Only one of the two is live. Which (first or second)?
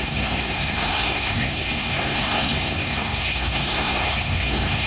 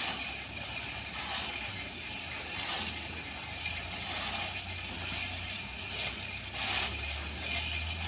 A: second